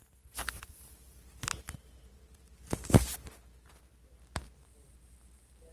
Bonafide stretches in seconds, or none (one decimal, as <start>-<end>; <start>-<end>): 0.0-5.7